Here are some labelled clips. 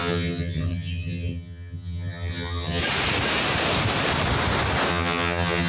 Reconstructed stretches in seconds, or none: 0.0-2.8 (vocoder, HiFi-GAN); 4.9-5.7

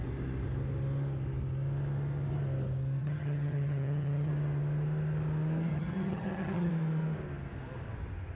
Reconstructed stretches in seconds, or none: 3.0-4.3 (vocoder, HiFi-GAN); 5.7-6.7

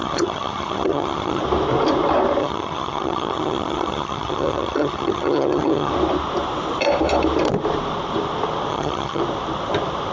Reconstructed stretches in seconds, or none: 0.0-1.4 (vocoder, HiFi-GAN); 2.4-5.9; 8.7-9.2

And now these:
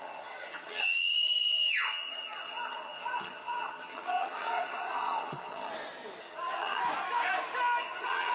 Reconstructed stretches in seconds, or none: 0.0-5.7 (vocoder, HiFi-GAN); 6.2-6.8; 7.8-8.3